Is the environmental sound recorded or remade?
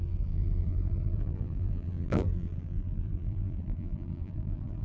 remade